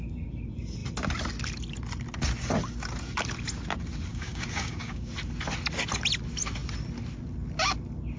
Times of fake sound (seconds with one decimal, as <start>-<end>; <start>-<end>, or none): 4.1-5.1